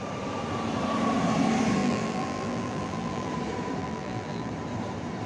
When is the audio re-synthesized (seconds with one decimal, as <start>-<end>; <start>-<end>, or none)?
1.8-3.3; 3.8-4.5